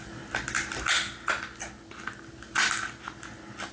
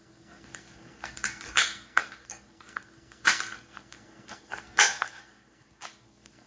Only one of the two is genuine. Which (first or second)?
first